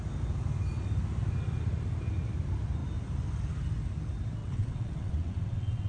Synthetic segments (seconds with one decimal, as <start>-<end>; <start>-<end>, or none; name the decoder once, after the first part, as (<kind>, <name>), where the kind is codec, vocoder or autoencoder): 4.4-5.9 (vocoder, WaveNeXt)